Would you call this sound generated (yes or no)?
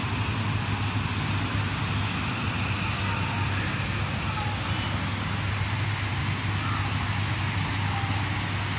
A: no